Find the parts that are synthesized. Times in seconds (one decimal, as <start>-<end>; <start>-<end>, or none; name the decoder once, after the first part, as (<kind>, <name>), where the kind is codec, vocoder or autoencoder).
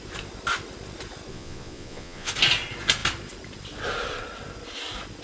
1.3-2.3 (vocoder, Vocos)